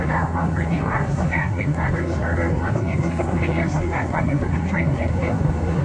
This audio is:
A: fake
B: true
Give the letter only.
A